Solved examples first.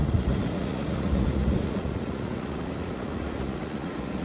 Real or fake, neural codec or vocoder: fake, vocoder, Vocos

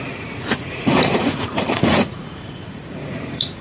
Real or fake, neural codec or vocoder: fake, vocoder, Vocos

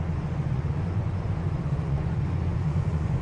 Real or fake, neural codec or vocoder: fake, vocoder, Vocos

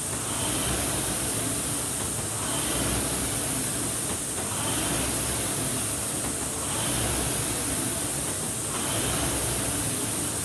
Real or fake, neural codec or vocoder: real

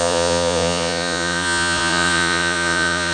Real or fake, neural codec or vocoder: fake, vocoder, Vocos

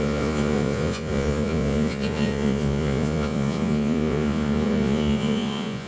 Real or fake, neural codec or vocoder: fake, vocoder, Vocos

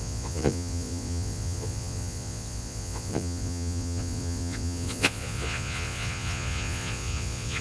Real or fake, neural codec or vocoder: fake, vocoder, Vocos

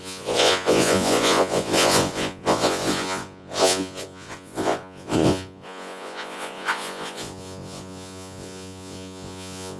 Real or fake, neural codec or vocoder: fake, vocoder, Vocos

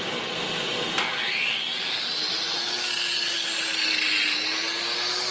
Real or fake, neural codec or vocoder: real